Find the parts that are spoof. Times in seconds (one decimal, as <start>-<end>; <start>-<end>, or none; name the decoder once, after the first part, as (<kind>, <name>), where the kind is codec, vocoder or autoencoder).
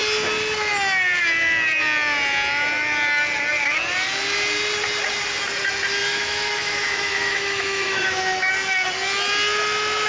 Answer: 6.0-8.5 (autoencoder, DAC-VAE)